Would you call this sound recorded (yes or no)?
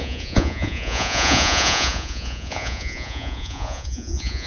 no